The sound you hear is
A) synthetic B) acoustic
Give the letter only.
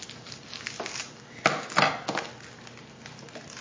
B